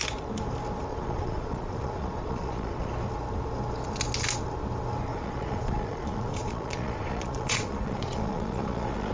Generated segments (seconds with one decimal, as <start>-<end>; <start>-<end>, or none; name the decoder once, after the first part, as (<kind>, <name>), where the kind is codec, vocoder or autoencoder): 0.9-2.9 (vocoder, Vocos); 5.1-9.1

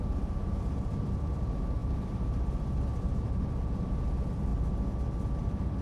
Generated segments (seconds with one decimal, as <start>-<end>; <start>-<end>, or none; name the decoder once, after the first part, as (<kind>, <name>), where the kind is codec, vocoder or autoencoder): 0.0-4.5 (vocoder, BigVGAN v2); 5.3-5.8

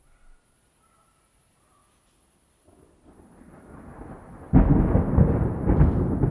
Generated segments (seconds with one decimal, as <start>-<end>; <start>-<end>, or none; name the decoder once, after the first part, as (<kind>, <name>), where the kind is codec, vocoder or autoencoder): none

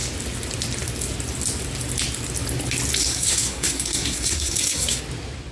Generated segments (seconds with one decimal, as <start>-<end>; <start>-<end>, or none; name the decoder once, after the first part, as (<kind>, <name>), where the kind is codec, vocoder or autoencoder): 3.0-5.0 (codec, SNAC)

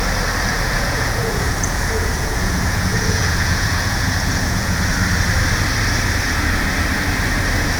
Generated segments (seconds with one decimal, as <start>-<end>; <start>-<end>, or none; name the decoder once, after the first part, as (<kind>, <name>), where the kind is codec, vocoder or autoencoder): 0.5-4.9 (vocoder, Vocos)